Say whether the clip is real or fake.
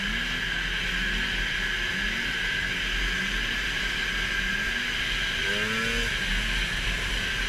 real